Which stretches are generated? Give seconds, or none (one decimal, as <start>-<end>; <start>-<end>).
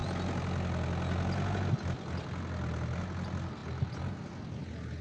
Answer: none